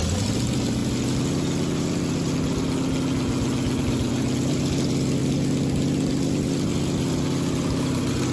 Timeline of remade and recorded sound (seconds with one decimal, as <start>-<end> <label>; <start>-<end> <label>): 0.0-0.8 remade; 0.8-3.8 recorded; 3.8-5.2 remade; 5.2-6.1 recorded; 6.1-8.3 remade